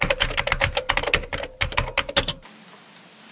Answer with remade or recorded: recorded